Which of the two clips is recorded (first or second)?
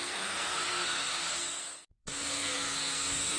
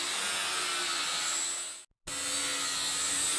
second